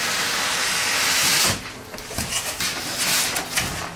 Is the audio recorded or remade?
recorded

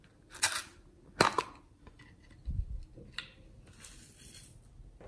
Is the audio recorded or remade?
recorded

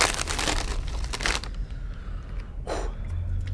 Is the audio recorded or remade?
recorded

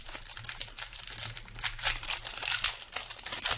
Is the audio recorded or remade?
recorded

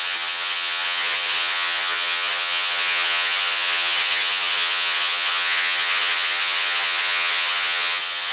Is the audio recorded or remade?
remade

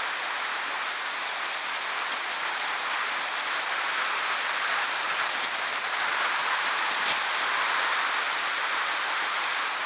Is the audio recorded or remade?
recorded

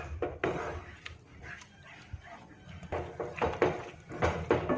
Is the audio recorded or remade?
recorded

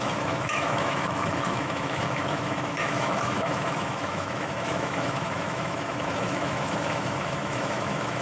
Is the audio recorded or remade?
remade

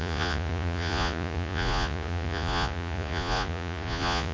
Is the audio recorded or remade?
remade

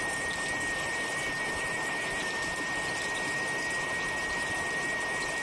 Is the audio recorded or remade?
recorded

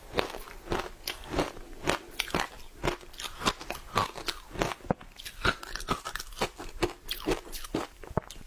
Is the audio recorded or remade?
recorded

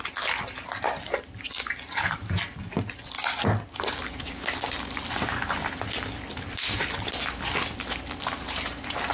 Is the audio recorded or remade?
recorded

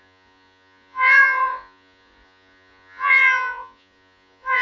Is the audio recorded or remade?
remade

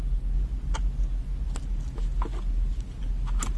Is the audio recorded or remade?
recorded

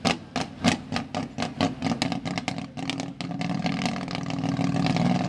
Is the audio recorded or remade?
recorded